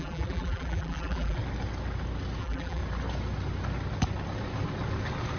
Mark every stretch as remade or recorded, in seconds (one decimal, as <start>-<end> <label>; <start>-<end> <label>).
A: 0.0-1.4 remade; 1.4-2.4 recorded; 2.4-2.8 remade; 2.8-5.4 recorded